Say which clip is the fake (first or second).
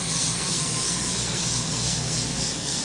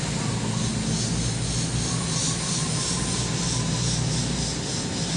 first